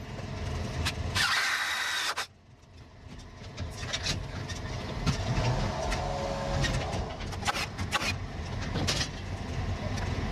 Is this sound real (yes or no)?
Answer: yes